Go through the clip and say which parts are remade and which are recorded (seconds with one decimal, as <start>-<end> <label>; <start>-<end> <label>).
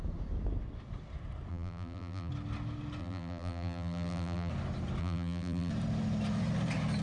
0.0-1.5 recorded; 1.5-2.3 remade; 2.3-3.0 recorded; 3.0-4.5 remade; 4.5-5.0 recorded; 5.0-5.7 remade; 5.7-7.0 recorded